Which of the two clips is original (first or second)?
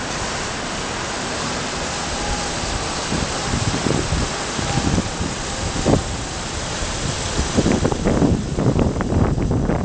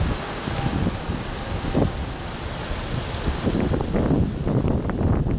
second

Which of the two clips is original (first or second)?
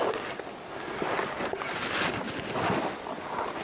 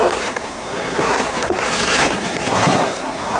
first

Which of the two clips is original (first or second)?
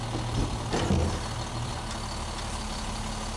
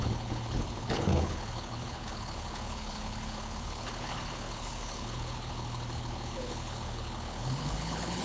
first